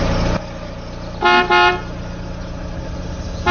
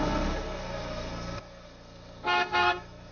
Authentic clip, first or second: first